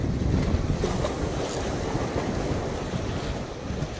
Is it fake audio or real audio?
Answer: real